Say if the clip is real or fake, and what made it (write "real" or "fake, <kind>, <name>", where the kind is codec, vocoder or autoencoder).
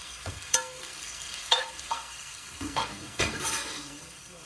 fake, codec, SNAC